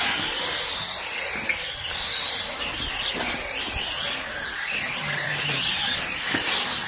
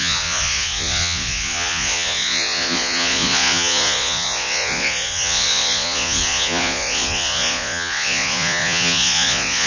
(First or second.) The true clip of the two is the first